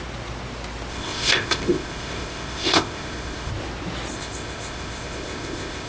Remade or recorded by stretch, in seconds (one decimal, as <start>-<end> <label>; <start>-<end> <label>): 0.0-0.9 recorded; 0.9-3.5 remade; 3.5-4.1 recorded; 4.1-5.9 remade